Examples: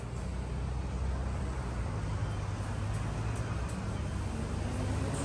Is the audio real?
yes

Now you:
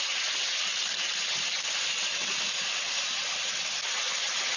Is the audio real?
yes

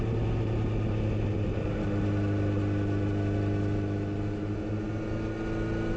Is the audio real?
yes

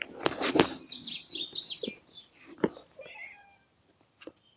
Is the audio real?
yes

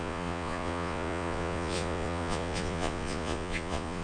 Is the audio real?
no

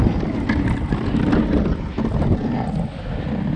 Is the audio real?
yes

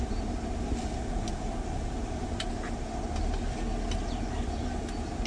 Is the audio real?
yes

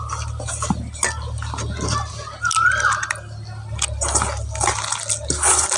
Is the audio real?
yes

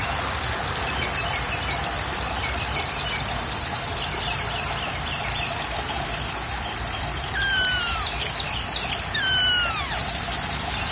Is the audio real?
no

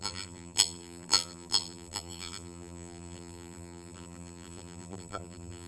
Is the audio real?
no